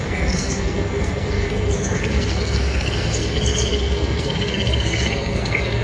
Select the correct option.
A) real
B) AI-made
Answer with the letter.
B